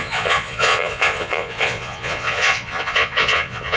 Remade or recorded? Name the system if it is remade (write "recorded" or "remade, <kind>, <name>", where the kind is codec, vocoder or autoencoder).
remade, vocoder, Vocos